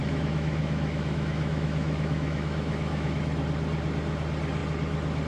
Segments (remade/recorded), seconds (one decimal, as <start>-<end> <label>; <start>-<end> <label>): 0.0-3.2 remade; 3.2-5.3 recorded